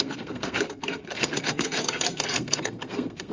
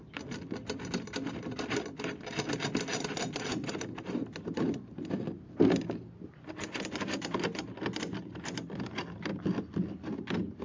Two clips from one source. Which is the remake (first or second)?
first